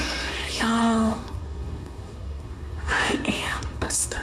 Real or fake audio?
fake